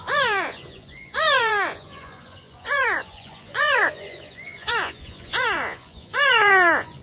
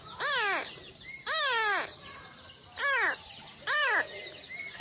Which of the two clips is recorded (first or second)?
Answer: second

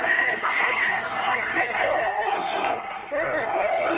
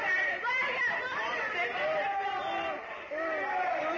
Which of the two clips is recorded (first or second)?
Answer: second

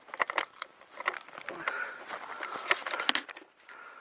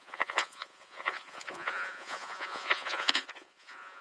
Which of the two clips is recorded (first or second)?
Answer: first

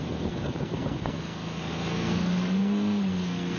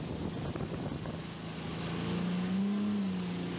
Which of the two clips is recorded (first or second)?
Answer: second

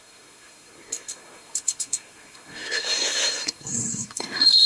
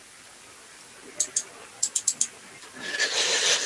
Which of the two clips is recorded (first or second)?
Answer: second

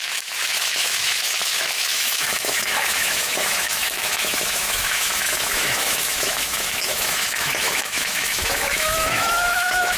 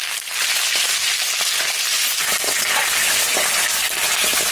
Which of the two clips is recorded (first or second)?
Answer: second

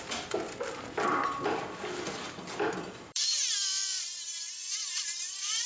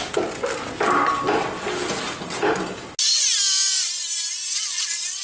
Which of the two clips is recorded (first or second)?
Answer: second